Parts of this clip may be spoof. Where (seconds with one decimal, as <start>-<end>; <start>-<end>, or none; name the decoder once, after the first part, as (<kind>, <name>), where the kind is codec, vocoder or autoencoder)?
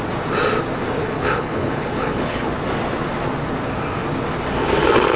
1.0-2.5 (codec, HILCodec)